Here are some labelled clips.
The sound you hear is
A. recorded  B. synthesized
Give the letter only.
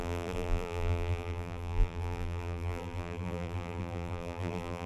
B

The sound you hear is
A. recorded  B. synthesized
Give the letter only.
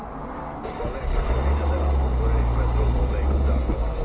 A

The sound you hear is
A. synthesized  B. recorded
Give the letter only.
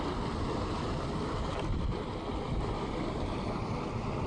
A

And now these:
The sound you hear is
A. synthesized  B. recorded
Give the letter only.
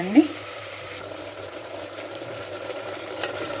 A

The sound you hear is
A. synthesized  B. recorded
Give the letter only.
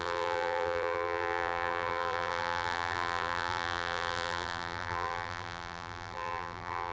A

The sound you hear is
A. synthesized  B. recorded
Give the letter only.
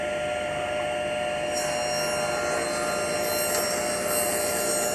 B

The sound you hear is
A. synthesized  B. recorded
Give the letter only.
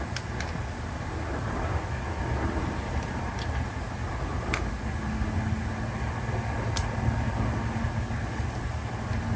B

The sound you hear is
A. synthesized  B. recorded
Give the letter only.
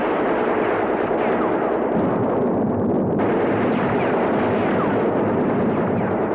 B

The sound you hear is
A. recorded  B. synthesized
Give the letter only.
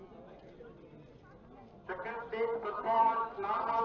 A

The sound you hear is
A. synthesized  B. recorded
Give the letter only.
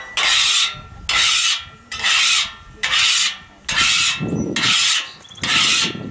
B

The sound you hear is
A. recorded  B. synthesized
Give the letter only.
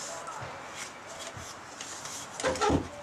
A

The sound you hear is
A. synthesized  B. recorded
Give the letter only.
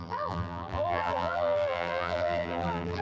A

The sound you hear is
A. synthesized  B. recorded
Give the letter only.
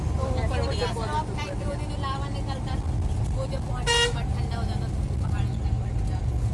B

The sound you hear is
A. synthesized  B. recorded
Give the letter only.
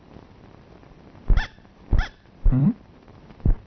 A